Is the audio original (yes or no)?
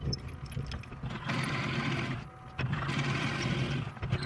yes